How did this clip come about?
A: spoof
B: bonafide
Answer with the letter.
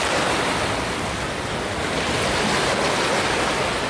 B